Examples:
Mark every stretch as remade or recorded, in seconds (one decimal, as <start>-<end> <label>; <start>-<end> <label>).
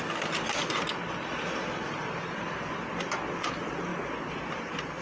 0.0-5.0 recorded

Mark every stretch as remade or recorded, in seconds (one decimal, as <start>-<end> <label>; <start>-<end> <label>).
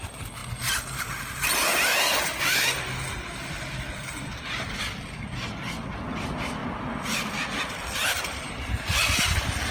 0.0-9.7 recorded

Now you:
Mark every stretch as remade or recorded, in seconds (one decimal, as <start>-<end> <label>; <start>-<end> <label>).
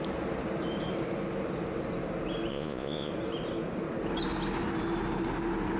0.0-2.5 recorded; 2.5-3.1 remade; 3.1-5.8 recorded